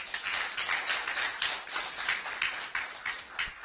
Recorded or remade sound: recorded